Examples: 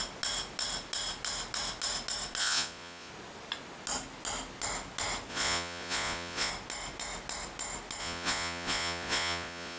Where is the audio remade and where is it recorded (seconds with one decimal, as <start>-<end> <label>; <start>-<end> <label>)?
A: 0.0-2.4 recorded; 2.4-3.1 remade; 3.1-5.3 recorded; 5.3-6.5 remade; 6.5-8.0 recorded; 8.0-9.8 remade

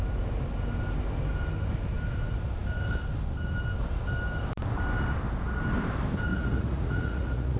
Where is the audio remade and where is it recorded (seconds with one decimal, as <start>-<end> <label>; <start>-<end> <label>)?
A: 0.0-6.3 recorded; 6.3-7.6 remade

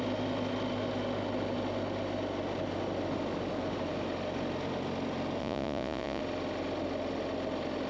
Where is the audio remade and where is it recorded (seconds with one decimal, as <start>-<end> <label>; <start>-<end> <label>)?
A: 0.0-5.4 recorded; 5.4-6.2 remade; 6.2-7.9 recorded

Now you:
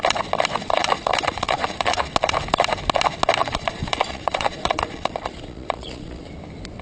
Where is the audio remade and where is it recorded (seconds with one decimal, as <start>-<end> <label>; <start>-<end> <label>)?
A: 0.0-0.6 recorded; 0.6-2.0 remade; 2.0-3.4 recorded; 3.4-6.3 remade; 6.3-6.8 recorded

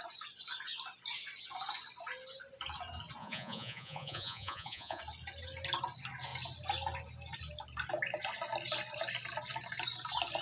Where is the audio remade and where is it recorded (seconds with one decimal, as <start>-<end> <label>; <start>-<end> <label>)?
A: 0.0-3.2 recorded; 3.2-5.0 remade; 5.0-10.4 recorded

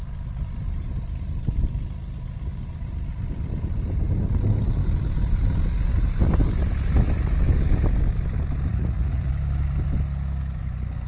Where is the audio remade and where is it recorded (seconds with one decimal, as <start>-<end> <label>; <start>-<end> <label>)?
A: 0.0-8.7 recorded; 8.7-9.3 remade; 9.3-11.1 recorded

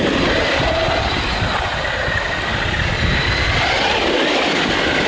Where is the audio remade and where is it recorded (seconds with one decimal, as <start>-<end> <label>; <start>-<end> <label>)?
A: 0.0-5.1 recorded

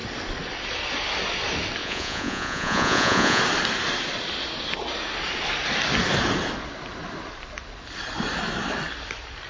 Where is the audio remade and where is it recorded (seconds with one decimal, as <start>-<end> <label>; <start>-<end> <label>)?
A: 0.0-1.8 recorded; 1.8-3.4 remade; 3.4-9.5 recorded